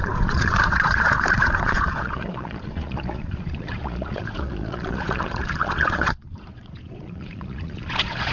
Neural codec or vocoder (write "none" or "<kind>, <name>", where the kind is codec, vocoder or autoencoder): vocoder, Vocos